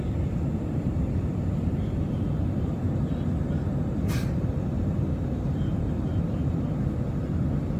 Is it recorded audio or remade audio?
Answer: recorded